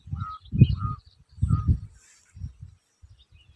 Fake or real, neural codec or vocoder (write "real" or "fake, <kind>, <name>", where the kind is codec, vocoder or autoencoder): real